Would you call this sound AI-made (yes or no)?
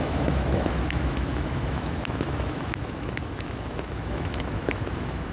yes